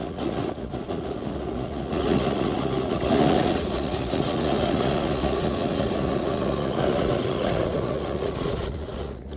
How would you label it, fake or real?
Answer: fake